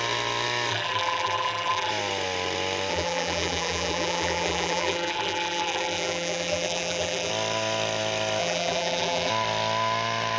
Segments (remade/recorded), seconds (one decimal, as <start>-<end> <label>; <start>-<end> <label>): 0.0-0.7 recorded; 0.7-1.9 remade; 1.9-2.9 recorded; 2.9-7.3 remade; 7.3-8.4 recorded; 8.4-9.3 remade; 9.3-10.4 recorded